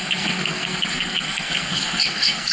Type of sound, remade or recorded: remade